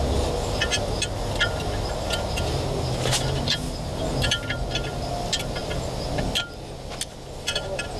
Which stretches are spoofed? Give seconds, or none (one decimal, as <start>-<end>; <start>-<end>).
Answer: none